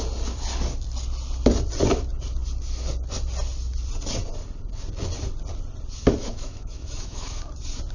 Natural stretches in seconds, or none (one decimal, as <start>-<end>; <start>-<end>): 0.0-6.2; 7.4-7.9